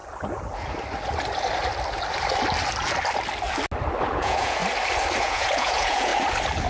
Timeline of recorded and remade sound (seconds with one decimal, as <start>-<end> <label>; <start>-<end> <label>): 0.0-4.0 recorded; 4.0-4.6 remade; 4.6-5.2 recorded; 5.2-6.1 remade; 6.1-6.7 recorded